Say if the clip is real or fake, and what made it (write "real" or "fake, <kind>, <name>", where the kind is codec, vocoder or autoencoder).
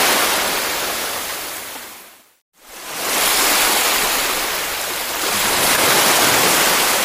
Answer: real